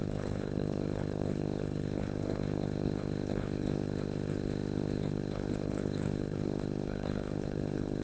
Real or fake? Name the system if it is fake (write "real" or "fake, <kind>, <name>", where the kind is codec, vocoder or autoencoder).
fake, codec, HILCodec